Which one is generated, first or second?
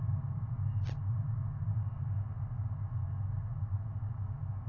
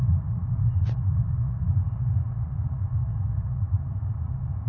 second